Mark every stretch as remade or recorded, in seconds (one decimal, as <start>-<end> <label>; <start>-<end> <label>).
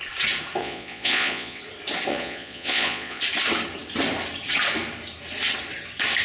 0.0-0.6 recorded; 0.6-1.6 remade; 1.6-2.1 recorded; 2.1-3.2 remade; 3.2-6.2 recorded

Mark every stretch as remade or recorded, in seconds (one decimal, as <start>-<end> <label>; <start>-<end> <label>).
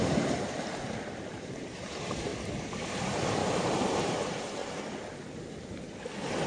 0.0-2.3 remade; 2.3-2.9 recorded; 2.9-4.6 remade; 4.6-6.5 recorded